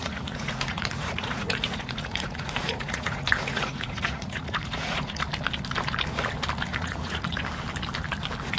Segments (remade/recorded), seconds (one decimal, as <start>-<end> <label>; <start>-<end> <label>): 0.0-5.2 remade; 5.2-6.7 recorded; 6.7-7.4 remade; 7.4-8.6 recorded